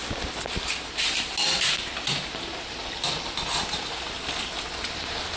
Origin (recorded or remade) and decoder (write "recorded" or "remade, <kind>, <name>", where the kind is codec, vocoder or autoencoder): recorded